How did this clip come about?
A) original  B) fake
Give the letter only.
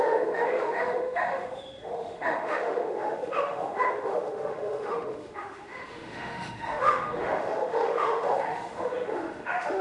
B